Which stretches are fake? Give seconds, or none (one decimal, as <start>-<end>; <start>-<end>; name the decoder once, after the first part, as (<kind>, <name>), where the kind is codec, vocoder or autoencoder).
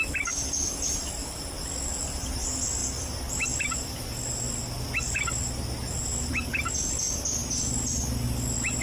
none